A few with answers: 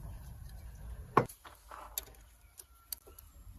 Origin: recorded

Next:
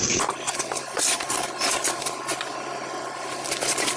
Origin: remade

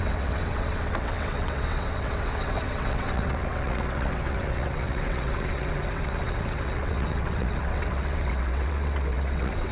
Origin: remade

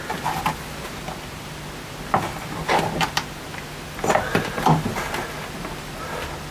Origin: recorded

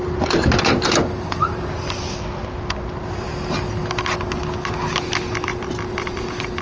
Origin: recorded